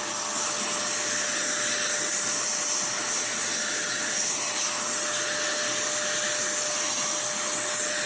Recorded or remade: recorded